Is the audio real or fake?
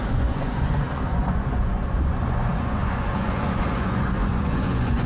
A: fake